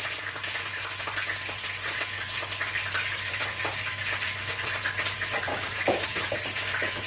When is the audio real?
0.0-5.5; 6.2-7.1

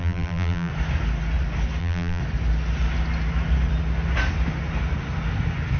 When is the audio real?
0.7-1.8; 2.2-5.8